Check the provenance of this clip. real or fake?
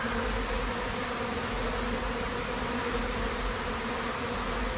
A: real